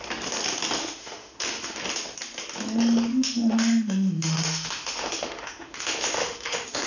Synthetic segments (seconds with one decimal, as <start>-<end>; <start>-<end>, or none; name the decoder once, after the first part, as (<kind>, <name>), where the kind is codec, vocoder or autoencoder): 0.8-1.8 (autoencoder, DAC-VAE); 3.1-6.9